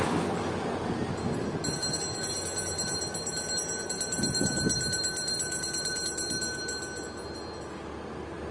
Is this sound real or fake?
real